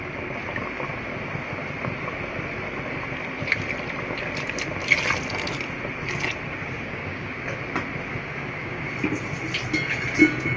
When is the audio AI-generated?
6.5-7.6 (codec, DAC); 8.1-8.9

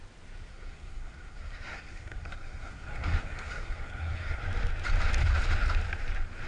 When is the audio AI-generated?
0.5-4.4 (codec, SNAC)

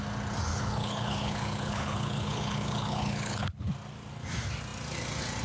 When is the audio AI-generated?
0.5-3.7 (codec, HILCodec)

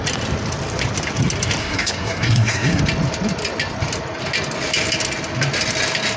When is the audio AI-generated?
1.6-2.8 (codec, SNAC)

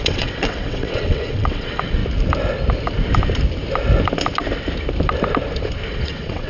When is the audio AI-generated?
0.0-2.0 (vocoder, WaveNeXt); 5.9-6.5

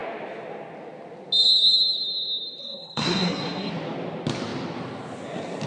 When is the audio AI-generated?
2.6-3.7 (codec, SNAC)

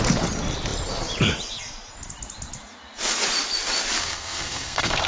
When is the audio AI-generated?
4.0-5.1 (codec, SNAC)

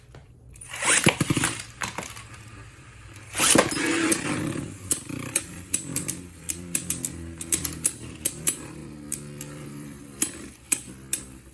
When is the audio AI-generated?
0.0-11.5 (vocoder, BigVGAN v2)